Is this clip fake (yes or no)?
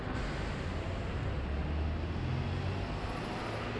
no